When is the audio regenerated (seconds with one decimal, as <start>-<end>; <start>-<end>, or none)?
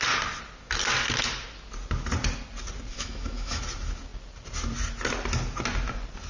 2.9-3.6